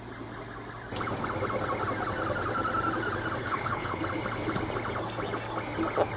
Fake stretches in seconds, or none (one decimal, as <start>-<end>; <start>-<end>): 3.4-4.0